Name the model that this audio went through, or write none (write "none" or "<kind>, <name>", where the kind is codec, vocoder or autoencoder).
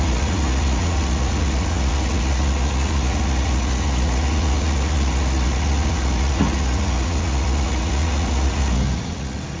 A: vocoder, Vocos